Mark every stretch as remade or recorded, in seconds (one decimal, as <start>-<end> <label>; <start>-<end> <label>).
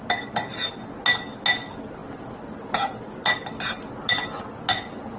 0.0-5.2 recorded